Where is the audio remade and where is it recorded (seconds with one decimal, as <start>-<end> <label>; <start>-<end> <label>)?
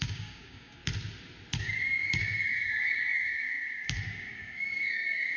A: 0.0-0.8 remade; 0.8-1.6 recorded; 1.6-5.4 remade